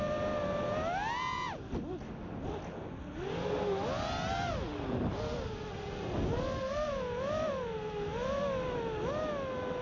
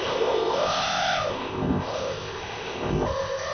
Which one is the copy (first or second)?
second